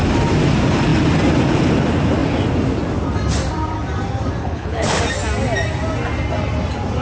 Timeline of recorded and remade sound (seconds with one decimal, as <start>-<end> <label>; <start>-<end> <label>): 0.0-4.4 recorded; 4.4-5.0 remade; 5.0-7.0 recorded